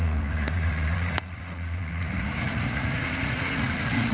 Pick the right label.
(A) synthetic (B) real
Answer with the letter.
A